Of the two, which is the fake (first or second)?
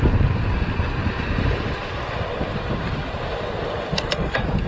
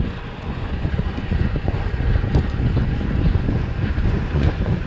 second